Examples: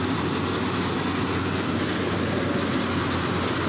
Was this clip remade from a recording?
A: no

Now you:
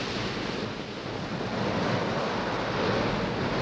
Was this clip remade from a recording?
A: no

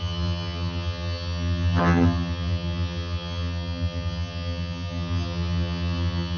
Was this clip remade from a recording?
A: yes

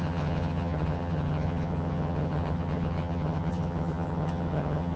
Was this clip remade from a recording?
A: yes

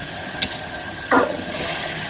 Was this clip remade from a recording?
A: yes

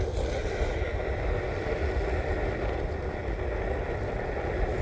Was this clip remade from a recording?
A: no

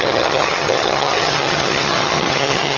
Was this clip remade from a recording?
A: yes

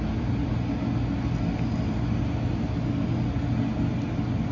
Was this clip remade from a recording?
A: no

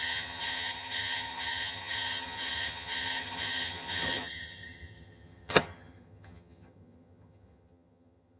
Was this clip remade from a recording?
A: yes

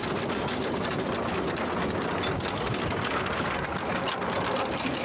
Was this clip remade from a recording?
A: no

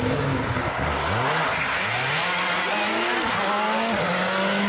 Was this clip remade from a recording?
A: no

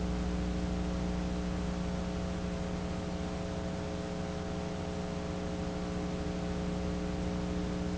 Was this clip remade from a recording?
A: no